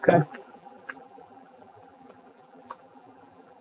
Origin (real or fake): fake